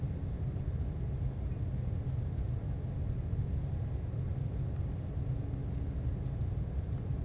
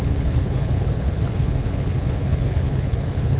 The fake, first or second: second